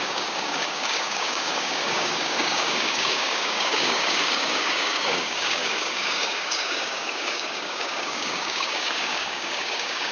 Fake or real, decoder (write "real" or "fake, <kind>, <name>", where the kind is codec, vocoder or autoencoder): fake, codec, DAC